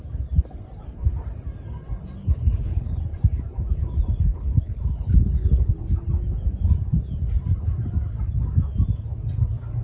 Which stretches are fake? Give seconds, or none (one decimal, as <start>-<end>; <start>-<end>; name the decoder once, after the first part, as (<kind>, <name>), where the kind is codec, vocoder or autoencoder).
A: 2.2-3.0 (codec, HILCodec); 4.3-5.7